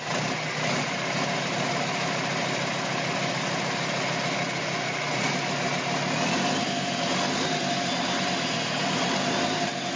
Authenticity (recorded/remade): recorded